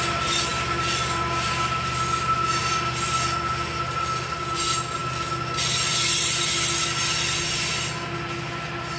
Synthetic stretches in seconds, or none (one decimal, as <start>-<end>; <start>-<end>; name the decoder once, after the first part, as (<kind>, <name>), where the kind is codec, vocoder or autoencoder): none